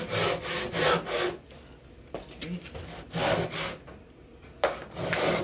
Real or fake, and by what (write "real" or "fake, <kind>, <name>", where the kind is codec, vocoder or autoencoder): real